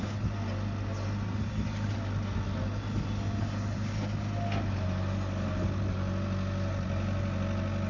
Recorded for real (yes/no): yes